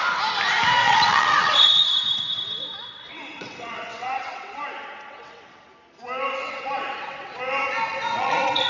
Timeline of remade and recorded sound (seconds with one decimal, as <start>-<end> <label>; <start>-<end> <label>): 0.0-0.8 recorded; 0.8-5.7 remade; 5.7-6.3 recorded; 6.3-7.4 remade; 7.4-7.9 recorded; 7.9-8.7 remade